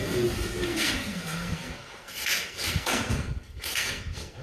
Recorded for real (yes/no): no